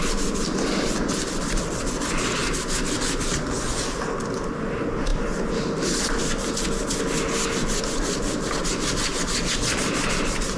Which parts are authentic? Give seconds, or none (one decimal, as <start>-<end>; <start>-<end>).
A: 0.0-10.6